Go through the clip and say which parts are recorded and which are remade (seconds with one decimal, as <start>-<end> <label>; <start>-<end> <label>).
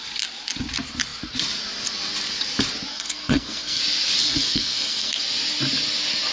0.0-2.9 recorded; 2.9-3.8 remade; 3.8-4.2 recorded; 4.2-5.2 remade; 5.2-6.3 recorded